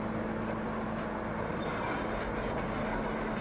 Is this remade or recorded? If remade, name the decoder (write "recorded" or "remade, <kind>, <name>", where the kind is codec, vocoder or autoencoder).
recorded